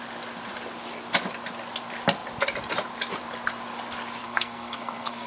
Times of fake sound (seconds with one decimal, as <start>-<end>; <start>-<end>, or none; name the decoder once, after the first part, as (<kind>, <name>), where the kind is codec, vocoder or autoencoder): 4.2-5.3 (codec, SNAC)

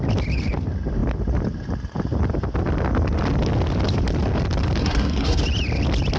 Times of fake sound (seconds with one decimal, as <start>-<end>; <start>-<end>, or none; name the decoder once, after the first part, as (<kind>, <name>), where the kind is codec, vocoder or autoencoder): 4.8-5.4 (codec, SNAC)

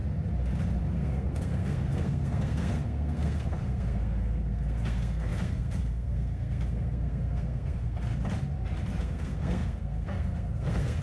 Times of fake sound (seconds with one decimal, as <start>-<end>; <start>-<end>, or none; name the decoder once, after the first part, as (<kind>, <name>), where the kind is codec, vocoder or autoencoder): 0.8-8.1 (codec, SNAC); 9.0-11.0

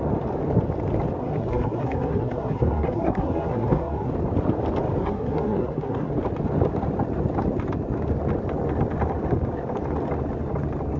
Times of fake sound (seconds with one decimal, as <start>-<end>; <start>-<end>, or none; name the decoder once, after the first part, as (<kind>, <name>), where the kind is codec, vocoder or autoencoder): 1.2-4.1 (codec, SNAC); 5.0-6.1

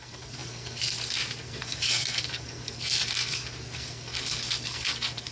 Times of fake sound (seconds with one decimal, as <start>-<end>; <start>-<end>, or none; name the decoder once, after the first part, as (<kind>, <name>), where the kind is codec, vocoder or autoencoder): 0.0-5.3 (codec, SNAC)

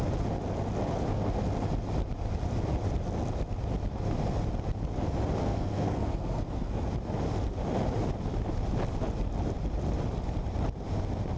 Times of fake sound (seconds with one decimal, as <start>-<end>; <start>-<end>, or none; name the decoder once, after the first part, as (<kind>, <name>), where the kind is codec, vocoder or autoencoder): 5.4-6.8 (codec, SNAC)

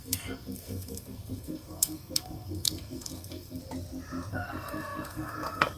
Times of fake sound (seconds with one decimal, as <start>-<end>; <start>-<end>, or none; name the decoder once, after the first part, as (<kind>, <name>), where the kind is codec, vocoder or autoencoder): 0.0-3.6 (codec, SNAC); 4.3-5.8